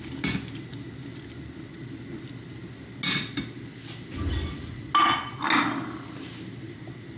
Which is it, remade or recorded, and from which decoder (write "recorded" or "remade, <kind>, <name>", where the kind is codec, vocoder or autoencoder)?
recorded